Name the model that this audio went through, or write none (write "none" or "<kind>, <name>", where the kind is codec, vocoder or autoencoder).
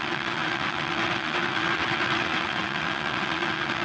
vocoder, WaveNeXt